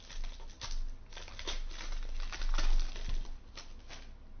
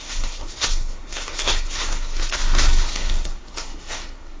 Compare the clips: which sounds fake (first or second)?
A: second